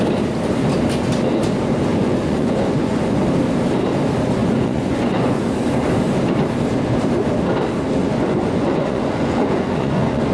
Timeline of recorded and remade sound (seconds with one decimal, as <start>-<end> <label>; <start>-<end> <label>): 0.0-1.9 recorded; 1.9-3.2 remade; 3.2-4.4 recorded; 4.4-5.4 remade; 5.4-8.0 recorded; 8.0-10.3 remade